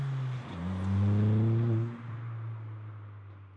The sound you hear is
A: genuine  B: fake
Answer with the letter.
A